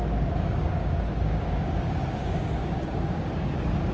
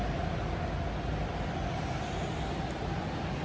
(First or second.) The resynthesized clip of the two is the first